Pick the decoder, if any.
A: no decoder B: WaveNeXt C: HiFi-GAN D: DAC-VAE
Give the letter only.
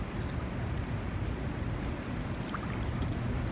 A